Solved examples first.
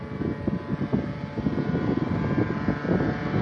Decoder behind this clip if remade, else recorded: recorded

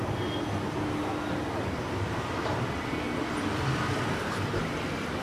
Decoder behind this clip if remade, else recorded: recorded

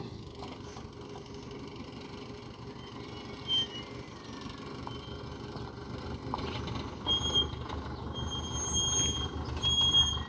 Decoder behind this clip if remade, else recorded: recorded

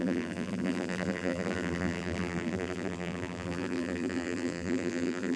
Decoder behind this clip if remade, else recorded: remade, vocoder, BigVGAN v2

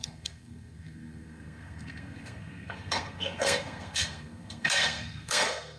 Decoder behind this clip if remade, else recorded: remade, codec, SNAC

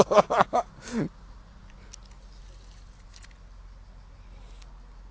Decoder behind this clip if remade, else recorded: recorded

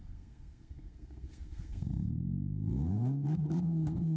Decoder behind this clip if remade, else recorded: remade, codec, SNAC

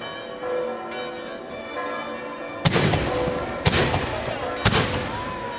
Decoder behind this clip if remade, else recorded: recorded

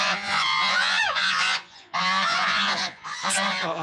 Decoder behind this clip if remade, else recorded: remade, vocoder, Vocos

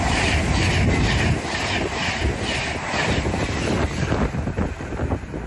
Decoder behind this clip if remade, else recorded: recorded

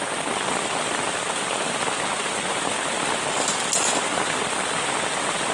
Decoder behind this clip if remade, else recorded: recorded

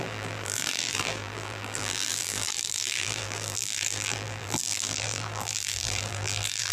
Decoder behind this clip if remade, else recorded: remade, vocoder, BigVGAN v2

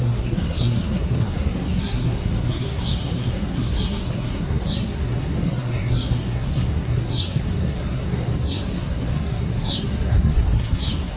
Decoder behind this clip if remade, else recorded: remade, codec, SNAC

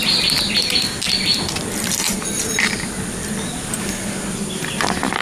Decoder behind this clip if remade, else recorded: remade, vocoder, BigVGAN v2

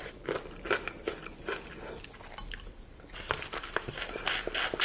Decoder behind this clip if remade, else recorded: recorded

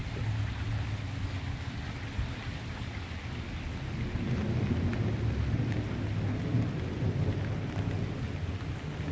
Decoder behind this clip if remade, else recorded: recorded